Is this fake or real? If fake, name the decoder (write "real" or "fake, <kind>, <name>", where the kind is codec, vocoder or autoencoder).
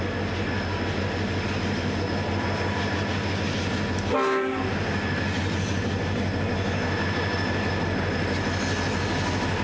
real